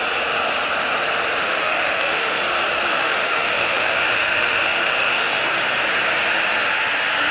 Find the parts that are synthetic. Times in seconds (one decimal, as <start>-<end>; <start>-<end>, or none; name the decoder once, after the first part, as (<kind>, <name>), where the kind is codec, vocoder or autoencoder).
1.4-2.4 (autoencoder, DAC-VAE); 2.9-5.4

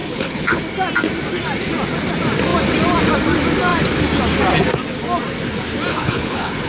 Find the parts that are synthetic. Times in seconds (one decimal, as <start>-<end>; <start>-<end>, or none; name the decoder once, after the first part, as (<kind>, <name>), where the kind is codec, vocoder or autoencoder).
0.0-0.6 (codec, HILCodec); 5.9-6.7

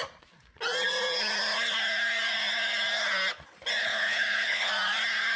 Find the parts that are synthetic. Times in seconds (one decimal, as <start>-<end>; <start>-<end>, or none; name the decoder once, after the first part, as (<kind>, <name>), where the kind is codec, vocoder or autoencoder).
3.8-4.7 (codec, HILCodec)

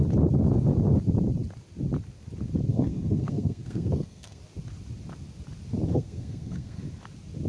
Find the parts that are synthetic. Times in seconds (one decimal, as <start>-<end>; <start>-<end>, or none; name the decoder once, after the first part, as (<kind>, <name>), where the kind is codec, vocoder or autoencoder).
2.7-4.4 (codec, SNAC); 5.9-6.8

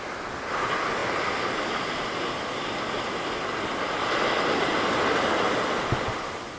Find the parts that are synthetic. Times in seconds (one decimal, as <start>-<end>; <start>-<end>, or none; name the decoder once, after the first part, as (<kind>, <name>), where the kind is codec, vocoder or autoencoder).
none

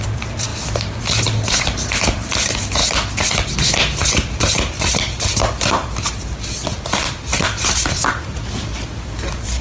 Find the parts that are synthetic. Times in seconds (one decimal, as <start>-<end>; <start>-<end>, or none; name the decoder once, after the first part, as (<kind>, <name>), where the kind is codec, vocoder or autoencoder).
0.0-0.5 (vocoder, BigVGAN v2); 1.0-2.8; 3.6-9.6

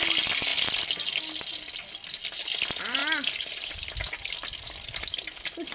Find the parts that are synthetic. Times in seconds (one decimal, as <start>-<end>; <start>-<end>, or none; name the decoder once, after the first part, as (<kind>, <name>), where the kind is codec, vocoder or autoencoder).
none